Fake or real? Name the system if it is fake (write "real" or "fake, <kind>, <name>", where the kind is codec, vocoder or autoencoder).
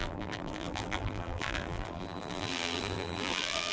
fake, vocoder, BigVGAN v2